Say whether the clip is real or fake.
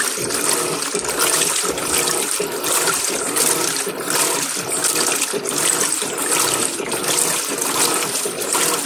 real